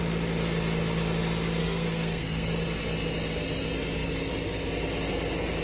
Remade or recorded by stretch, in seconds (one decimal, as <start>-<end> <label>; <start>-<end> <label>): 0.0-1.6 recorded; 1.6-2.5 remade; 2.5-5.6 recorded

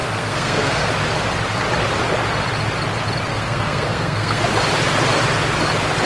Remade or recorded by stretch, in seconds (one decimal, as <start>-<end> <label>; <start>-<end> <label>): 0.0-0.9 remade; 0.9-3.3 recorded; 3.3-4.4 remade; 4.4-6.1 recorded

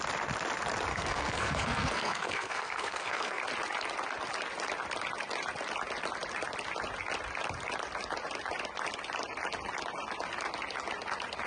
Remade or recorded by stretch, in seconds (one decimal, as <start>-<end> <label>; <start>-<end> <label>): 0.0-0.9 recorded; 0.9-3.4 remade; 3.4-11.5 recorded